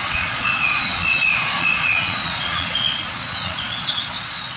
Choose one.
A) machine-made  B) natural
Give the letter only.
A